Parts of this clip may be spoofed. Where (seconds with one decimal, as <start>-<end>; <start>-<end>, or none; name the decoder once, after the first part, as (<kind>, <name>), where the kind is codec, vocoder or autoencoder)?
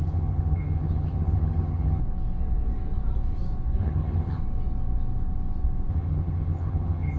0.0-2.0 (vocoder, HiFi-GAN); 3.8-4.4; 5.9-7.2